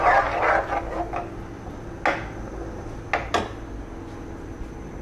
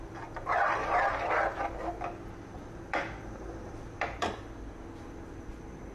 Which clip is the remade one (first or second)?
second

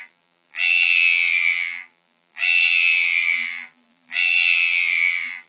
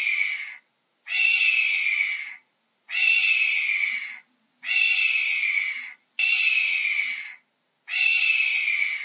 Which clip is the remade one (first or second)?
first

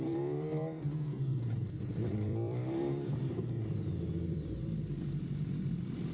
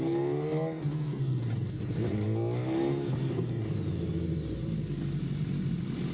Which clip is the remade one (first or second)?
first